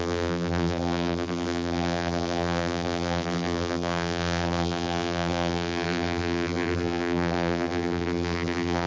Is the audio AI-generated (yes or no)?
yes